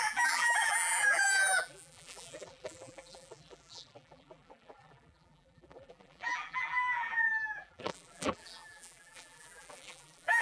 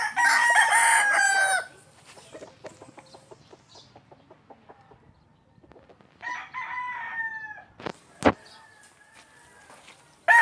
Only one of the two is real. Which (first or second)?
second